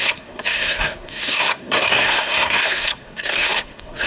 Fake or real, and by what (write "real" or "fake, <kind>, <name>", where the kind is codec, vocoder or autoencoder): fake, codec, SNAC